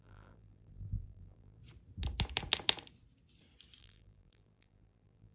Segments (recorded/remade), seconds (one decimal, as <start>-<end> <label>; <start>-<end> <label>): 0.0-1.6 remade; 1.6-3.8 recorded; 3.8-5.3 remade